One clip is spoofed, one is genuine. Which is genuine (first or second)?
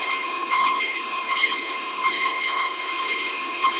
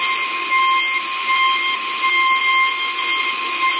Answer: second